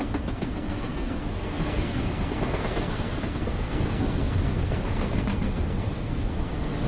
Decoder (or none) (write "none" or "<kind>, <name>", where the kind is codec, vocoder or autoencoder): codec, SNAC